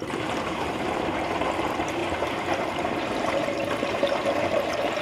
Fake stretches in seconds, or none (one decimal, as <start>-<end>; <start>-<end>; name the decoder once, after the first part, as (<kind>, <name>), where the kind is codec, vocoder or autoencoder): 0.0-2.0 (vocoder, BigVGAN v2); 2.6-5.0